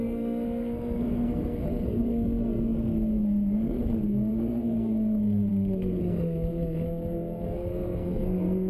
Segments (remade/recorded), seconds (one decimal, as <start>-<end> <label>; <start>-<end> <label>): 0.0-8.7 remade